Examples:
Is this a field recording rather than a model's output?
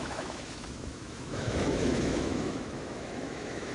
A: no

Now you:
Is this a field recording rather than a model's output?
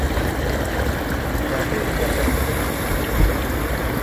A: yes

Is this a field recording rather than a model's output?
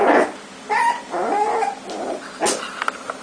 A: yes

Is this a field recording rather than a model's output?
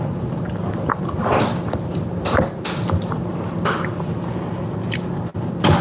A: yes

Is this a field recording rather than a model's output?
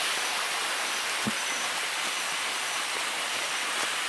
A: yes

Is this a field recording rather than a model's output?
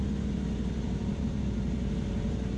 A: no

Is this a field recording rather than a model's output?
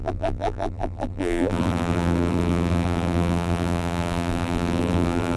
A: no